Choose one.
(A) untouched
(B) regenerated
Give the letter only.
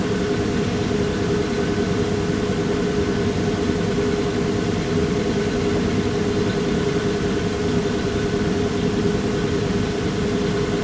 A